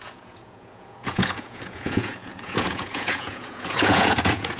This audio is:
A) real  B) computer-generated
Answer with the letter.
B